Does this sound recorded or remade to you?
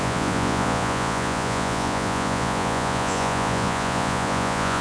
remade